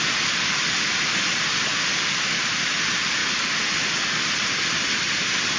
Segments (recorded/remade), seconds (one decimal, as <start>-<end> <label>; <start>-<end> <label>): 0.0-3.2 remade; 3.2-5.0 recorded; 5.0-5.6 remade